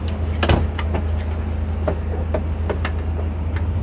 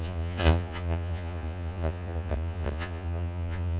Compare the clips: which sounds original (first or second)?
first